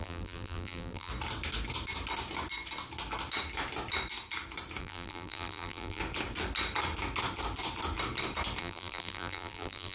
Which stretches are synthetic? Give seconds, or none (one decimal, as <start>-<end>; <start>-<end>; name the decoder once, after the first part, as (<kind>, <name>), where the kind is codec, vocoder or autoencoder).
0.0-1.1 (vocoder, BigVGAN v2); 4.8-6.0; 8.6-9.9